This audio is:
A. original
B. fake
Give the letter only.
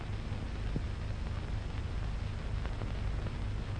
A